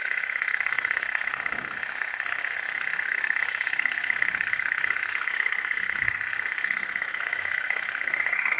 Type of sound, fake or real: fake